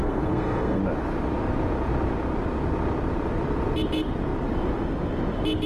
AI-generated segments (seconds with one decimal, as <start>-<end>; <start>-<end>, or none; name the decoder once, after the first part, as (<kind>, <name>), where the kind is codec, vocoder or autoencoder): 0.0-0.8 (codec, SNAC)